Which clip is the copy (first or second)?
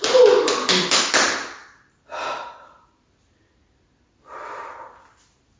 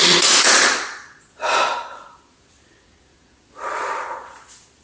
second